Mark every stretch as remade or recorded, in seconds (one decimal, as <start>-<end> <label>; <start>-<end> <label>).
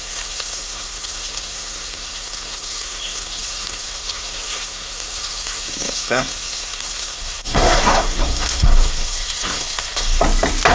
0.0-10.2 remade; 10.2-10.7 recorded